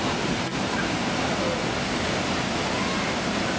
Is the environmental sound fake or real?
real